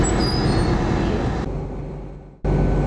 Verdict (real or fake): real